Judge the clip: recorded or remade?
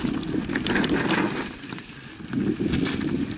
recorded